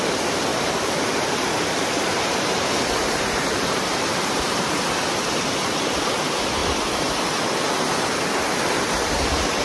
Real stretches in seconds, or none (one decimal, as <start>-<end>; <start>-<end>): 0.0-0.5; 4.9-9.6